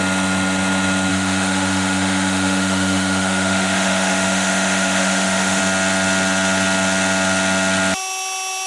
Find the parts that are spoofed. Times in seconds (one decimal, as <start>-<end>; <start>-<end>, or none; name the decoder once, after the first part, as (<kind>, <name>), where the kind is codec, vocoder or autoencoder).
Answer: 1.1-5.6 (autoencoder, DAC-VAE)